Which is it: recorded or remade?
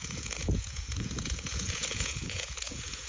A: remade